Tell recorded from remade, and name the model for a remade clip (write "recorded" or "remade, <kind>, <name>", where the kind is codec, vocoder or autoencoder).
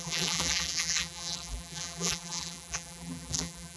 remade, vocoder, BigVGAN v2